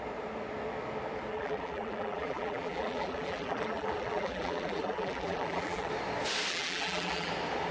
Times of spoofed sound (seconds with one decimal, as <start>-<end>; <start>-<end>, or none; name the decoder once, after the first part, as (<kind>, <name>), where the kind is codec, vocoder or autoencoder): 1.3-5.9 (vocoder, BigVGAN v2); 6.5-7.3